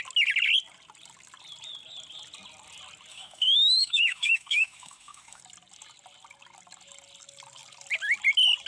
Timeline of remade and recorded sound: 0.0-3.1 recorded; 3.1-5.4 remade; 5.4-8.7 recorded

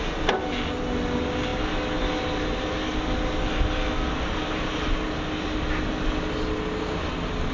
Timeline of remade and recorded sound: 0.0-7.5 recorded

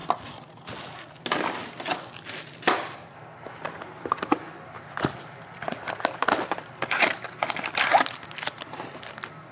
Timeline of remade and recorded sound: 0.0-9.5 recorded